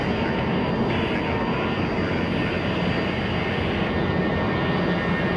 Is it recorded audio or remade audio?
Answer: recorded